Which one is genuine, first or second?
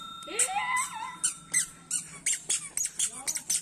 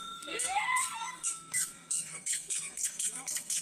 first